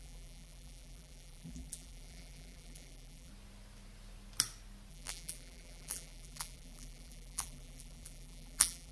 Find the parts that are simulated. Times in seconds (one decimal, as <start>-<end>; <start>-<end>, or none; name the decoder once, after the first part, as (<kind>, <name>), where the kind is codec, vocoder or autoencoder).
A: 0.0-3.3 (vocoder, BigVGAN v2); 4.9-8.9

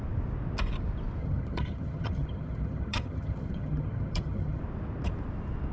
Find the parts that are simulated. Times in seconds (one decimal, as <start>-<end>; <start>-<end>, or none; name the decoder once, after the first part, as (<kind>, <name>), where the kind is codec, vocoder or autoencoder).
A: 1.2-4.6 (vocoder, HiFi-GAN)

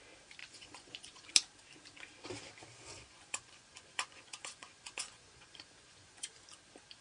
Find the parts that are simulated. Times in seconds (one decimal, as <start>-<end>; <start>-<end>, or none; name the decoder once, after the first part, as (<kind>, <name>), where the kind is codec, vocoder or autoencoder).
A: 0.4-1.3 (vocoder, Vocos); 2.9-6.4

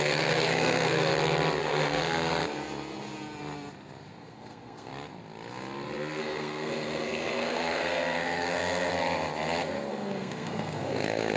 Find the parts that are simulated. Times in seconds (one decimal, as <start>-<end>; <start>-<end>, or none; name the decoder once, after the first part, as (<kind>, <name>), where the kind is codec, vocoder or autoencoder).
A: 0.0-1.1 (codec, SNAC); 1.6-2.4; 4.2-4.9; 6.2-8.9; 9.9-11.4

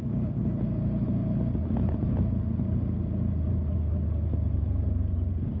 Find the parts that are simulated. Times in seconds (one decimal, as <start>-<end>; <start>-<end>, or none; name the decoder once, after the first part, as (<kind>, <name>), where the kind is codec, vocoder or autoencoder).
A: none